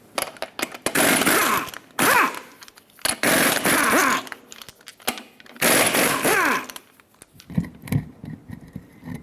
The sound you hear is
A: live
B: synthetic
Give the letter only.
A